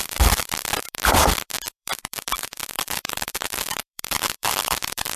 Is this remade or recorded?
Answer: remade